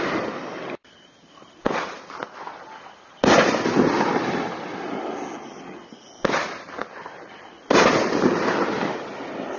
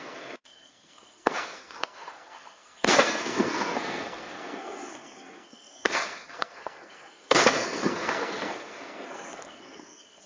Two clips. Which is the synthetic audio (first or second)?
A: second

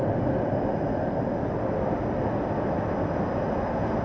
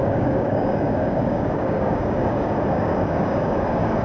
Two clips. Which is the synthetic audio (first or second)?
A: second